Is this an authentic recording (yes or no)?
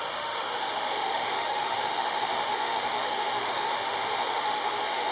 no